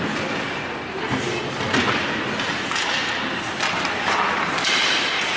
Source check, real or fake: real